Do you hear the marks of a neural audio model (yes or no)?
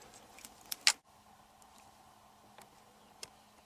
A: no